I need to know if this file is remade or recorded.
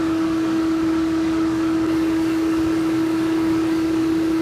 remade